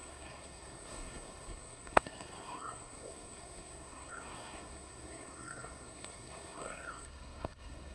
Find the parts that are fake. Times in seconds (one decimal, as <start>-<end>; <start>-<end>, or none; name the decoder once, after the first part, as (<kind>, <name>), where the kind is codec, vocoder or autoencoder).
0.0-7.9 (codec, SNAC)